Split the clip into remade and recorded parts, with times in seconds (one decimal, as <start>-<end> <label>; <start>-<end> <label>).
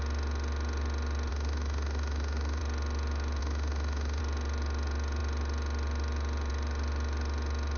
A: 0.0-1.3 recorded; 1.3-2.6 remade; 2.6-3.4 recorded; 3.4-4.2 remade; 4.2-7.8 recorded